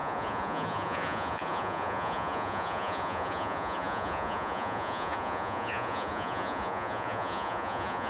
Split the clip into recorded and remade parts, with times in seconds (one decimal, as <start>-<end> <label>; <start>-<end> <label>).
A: 0.0-8.1 remade